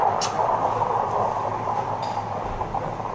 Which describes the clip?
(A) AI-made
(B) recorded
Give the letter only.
A